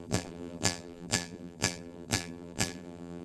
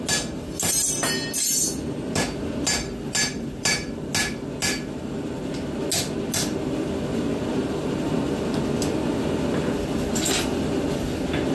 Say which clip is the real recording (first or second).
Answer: second